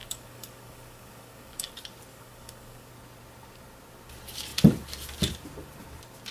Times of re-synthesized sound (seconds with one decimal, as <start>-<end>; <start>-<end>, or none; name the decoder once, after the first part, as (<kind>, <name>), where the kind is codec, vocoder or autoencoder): 0.0-1.7 (codec, DAC); 2.1-2.9